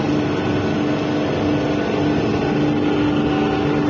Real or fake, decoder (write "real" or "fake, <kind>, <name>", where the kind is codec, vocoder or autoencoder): real